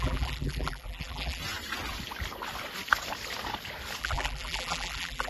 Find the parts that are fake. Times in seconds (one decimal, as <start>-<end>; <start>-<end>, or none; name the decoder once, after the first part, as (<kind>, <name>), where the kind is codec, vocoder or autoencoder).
0.0-1.4 (vocoder, BigVGAN v2); 4.0-5.3